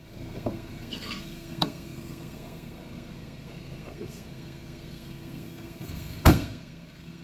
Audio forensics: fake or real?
fake